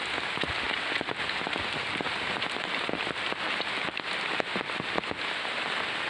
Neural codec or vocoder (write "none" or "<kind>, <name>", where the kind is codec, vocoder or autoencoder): none